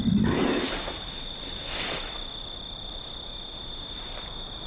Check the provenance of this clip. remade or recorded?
recorded